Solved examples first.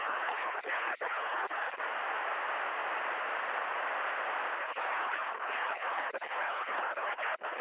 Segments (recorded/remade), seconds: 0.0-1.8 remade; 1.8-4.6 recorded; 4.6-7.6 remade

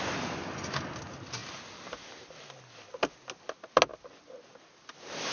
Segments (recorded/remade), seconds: 0.0-5.3 recorded

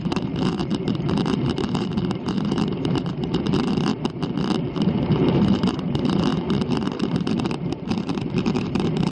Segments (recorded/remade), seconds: 0.0-3.9 remade; 3.9-4.9 recorded; 4.9-9.1 remade

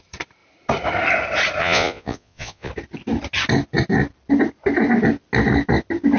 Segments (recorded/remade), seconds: 0.0-1.6 recorded; 1.6-2.7 remade; 2.7-6.2 recorded

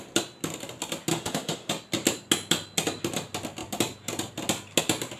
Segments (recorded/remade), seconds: 0.0-1.1 recorded; 1.1-1.7 remade; 1.7-5.2 recorded